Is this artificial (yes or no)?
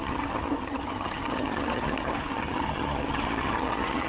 yes